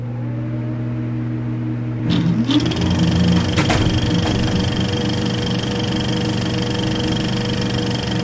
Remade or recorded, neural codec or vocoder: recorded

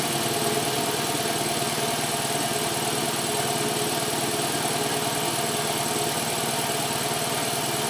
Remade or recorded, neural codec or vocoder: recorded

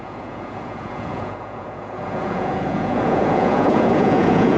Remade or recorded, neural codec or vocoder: remade, vocoder, Vocos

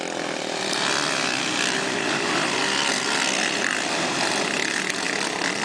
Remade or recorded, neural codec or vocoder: recorded